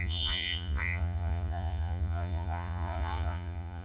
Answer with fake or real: fake